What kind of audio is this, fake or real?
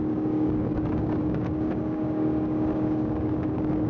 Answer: fake